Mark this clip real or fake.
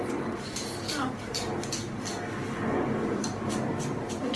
real